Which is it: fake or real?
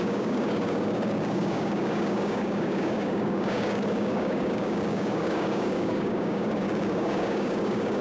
fake